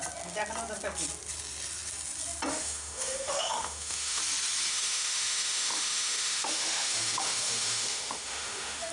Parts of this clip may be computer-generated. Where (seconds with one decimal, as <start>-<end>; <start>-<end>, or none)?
2.5-4.2; 4.7-8.9